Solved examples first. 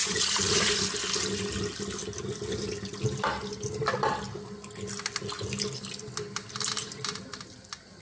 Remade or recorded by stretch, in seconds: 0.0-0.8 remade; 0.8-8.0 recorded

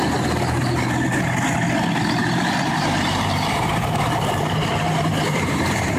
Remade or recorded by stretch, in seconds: 0.0-2.2 recorded; 2.2-6.0 remade

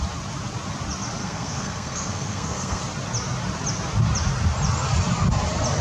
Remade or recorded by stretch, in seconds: 0.0-1.2 recorded; 1.2-2.8 remade; 2.8-5.8 recorded

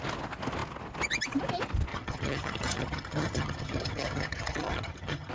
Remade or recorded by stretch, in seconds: 0.0-1.9 recorded; 1.9-5.3 remade

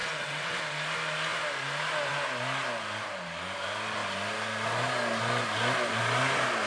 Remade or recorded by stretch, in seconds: 0.0-0.6 remade; 0.6-6.7 recorded